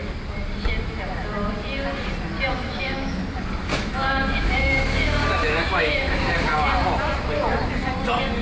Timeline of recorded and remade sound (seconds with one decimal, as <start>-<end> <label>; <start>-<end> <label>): 0.0-2.5 recorded; 2.5-3.2 remade; 3.2-3.7 recorded; 3.7-6.2 remade; 6.2-8.4 recorded